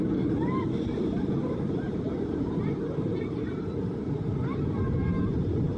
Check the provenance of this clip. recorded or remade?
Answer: remade